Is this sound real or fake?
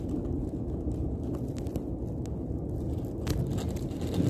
real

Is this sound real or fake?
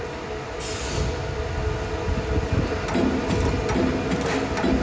real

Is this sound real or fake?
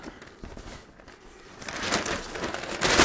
real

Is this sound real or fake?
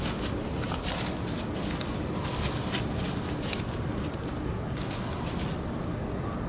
real